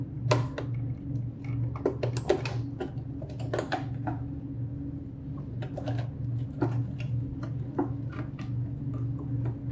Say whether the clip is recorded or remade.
recorded